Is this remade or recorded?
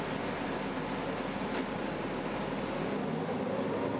recorded